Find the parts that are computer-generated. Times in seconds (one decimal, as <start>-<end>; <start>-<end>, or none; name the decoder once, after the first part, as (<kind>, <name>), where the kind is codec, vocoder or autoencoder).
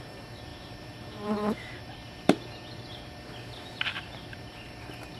0.0-2.0 (vocoder, BigVGAN v2); 2.8-5.2